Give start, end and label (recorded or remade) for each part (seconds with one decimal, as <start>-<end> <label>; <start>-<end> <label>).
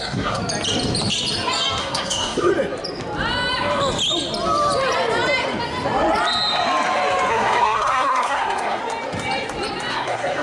0.0-0.4 remade; 0.4-1.8 recorded; 1.8-2.5 remade; 2.5-7.3 recorded; 7.3-8.8 remade; 8.8-9.9 recorded; 9.9-10.4 remade